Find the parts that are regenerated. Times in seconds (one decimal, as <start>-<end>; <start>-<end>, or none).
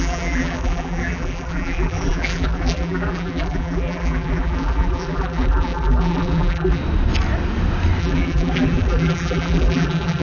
0.0-6.8; 8.0-10.2